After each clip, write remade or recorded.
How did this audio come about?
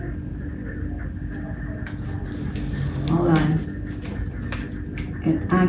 recorded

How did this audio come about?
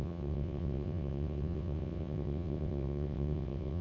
remade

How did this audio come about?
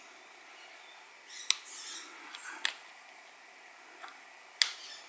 recorded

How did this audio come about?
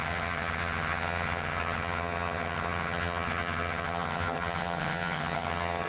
remade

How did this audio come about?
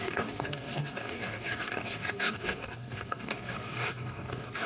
remade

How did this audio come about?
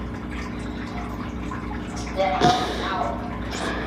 recorded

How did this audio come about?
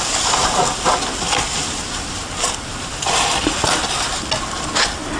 recorded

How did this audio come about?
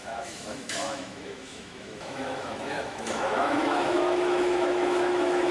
remade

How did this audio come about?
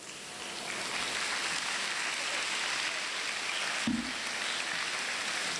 recorded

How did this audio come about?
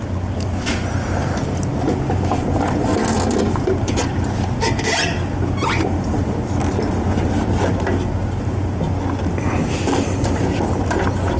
recorded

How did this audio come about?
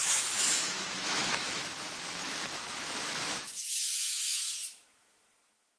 remade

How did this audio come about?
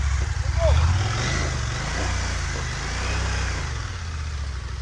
recorded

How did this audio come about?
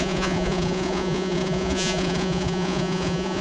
remade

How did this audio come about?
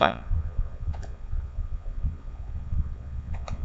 remade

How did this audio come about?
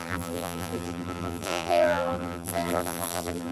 remade